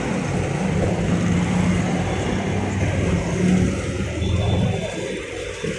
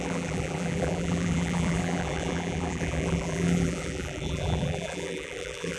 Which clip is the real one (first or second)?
first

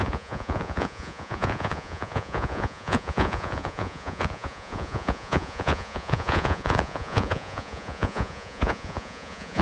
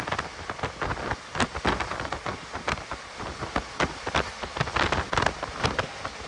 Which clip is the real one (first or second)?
second